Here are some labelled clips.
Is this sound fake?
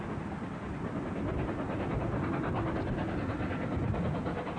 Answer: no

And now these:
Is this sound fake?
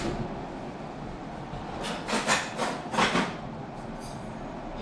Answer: no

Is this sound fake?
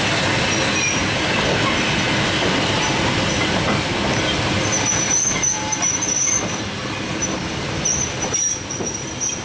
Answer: no